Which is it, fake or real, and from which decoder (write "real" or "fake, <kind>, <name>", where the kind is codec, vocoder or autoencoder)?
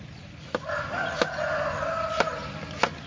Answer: real